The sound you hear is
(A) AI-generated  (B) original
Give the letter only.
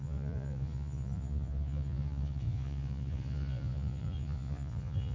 A